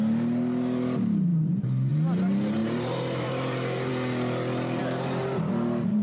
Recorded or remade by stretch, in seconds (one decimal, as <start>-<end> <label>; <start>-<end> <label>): 0.0-2.6 recorded; 2.6-3.9 remade; 3.9-4.8 recorded; 4.8-5.4 remade; 5.4-6.0 recorded